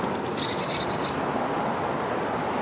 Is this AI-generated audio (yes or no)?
no